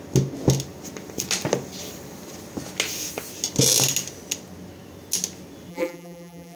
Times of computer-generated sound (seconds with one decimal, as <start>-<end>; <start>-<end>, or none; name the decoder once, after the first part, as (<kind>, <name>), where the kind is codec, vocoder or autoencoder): 5.7-6.6 (vocoder, BigVGAN v2)